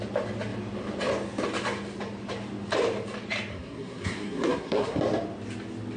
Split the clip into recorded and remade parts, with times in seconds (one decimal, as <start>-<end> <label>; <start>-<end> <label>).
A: 0.0-3.5 recorded; 3.5-5.0 remade; 5.0-6.0 recorded